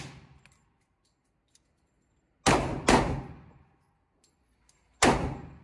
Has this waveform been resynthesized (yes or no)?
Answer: no